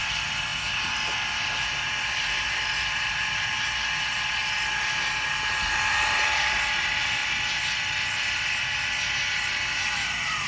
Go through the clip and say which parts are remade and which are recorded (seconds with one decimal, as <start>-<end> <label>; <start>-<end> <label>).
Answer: 0.0-10.5 recorded